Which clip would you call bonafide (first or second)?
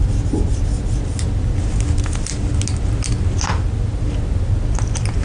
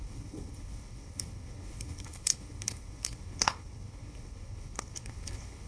first